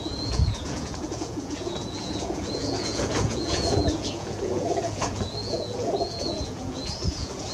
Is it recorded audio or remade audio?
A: remade